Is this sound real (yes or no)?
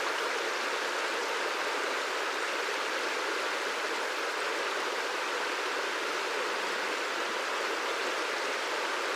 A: yes